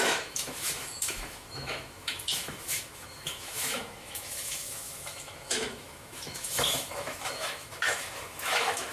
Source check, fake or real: fake